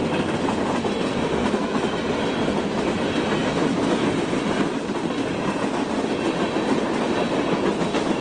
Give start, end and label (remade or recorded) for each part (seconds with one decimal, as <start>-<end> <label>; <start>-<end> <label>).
0.0-1.1 recorded; 1.1-1.8 remade; 1.8-8.2 recorded